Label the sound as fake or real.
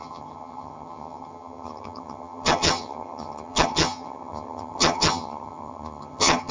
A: fake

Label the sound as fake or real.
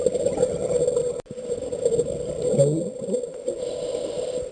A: real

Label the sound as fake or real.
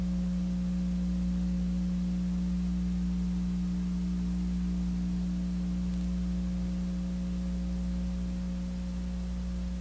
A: real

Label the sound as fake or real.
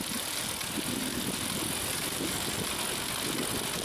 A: real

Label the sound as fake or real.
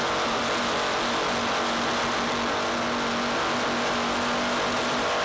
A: real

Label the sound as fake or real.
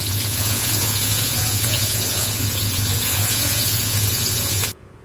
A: fake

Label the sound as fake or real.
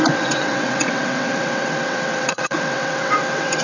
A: fake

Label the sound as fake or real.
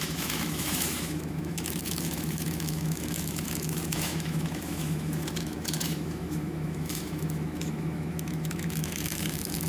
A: fake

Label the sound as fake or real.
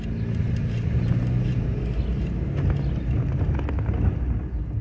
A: real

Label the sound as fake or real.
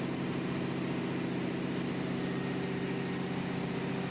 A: real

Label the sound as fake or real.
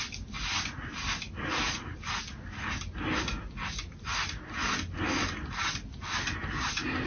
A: real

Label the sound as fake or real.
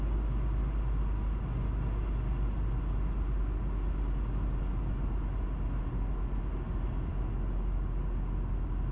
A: real